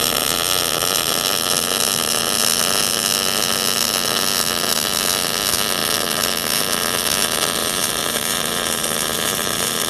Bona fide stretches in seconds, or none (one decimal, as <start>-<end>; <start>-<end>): 0.0-7.6